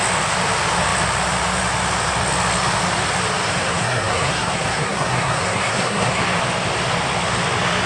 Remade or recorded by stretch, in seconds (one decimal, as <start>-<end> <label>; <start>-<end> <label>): 0.0-3.7 recorded; 3.7-6.2 remade; 6.2-7.9 recorded